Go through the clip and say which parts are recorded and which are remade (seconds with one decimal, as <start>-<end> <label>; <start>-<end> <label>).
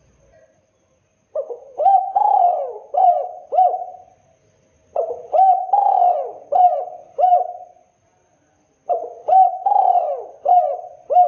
0.0-7.3 remade; 7.3-10.1 recorded; 10.1-11.3 remade